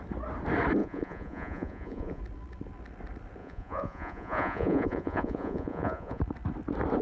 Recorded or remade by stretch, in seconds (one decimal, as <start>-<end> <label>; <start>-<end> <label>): 0.0-0.8 recorded; 0.8-2.2 remade; 2.2-3.4 recorded; 3.4-6.2 remade; 6.2-7.0 recorded